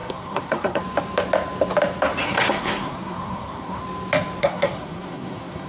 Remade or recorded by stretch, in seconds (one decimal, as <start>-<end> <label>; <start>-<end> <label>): 0.0-0.8 remade; 0.8-2.2 recorded; 2.2-3.8 remade; 3.8-4.4 recorded; 4.4-5.7 remade